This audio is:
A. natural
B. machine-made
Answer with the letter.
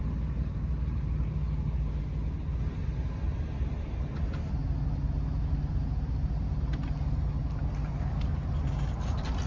A